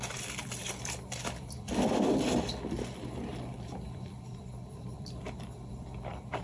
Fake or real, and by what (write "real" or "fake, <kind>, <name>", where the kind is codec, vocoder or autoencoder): fake, vocoder, BigVGAN v2